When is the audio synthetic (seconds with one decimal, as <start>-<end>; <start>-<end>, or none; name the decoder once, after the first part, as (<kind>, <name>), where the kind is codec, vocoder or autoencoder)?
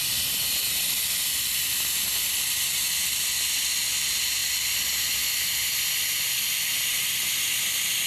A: none